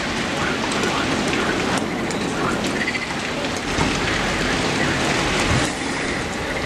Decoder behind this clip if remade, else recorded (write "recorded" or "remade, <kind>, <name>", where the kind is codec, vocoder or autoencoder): recorded